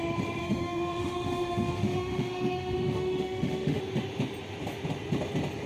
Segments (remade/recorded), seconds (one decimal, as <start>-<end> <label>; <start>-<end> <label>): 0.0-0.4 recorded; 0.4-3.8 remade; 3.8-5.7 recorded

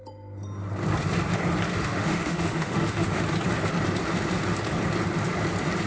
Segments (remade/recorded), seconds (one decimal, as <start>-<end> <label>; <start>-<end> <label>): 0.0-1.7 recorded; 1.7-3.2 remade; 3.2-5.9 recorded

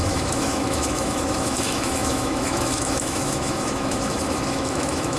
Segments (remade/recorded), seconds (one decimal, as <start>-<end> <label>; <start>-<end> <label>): 0.0-5.2 remade

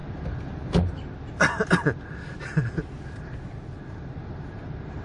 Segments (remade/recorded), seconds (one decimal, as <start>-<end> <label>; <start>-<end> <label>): 0.0-5.0 recorded